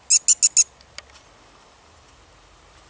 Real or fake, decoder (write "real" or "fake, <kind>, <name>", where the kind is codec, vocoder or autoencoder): real